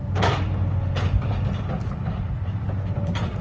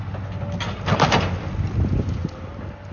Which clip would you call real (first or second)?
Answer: second